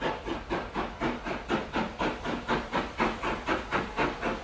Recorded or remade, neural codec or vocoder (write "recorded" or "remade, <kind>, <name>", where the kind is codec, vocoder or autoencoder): recorded